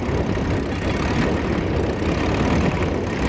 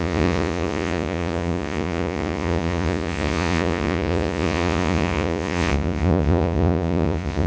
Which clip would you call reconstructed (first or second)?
second